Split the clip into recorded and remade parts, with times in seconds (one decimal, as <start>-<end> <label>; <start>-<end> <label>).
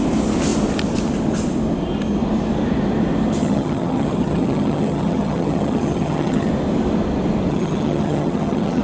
0.0-3.4 recorded; 3.4-6.5 remade; 6.5-7.5 recorded; 7.5-8.8 remade